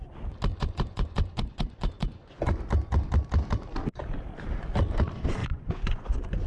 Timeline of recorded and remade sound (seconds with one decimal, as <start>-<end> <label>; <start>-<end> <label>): 0.0-0.5 recorded; 0.5-2.4 remade; 2.4-5.4 recorded; 5.4-6.1 remade; 6.1-6.5 recorded